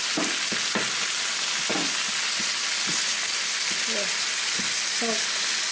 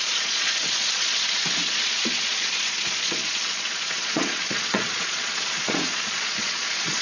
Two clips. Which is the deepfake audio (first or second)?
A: second